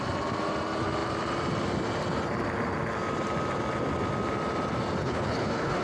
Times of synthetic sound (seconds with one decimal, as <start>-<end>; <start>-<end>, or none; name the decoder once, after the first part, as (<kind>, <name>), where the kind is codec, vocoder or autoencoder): 5.0-5.8 (codec, HILCodec)